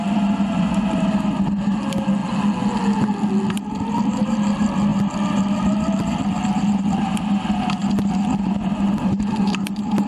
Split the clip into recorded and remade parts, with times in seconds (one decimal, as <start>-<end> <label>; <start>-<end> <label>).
0.0-10.1 recorded